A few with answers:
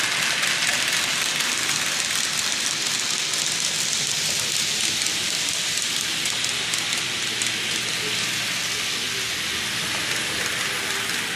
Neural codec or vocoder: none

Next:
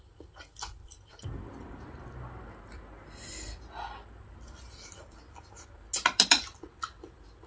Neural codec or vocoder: none